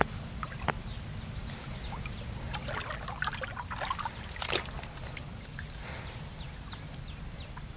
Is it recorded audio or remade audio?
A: recorded